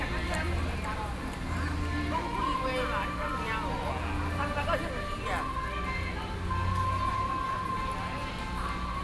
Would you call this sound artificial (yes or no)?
no